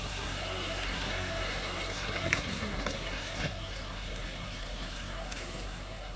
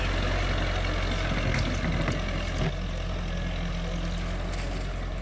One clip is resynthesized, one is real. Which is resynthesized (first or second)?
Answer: first